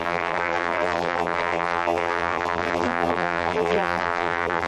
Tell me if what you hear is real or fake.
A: fake